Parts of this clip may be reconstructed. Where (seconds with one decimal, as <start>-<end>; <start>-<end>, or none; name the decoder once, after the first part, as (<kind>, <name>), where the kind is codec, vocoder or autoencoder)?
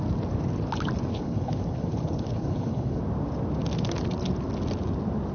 1.1-3.0 (codec, HILCodec)